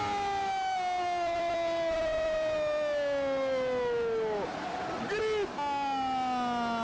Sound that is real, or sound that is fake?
real